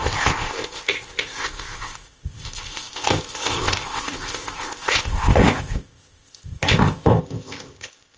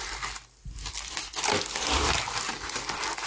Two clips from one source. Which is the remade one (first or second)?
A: first